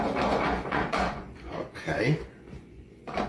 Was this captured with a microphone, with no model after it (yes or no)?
no